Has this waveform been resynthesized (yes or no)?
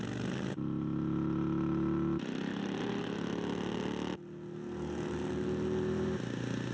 no